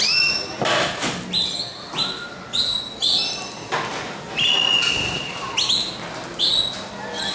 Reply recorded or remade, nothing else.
recorded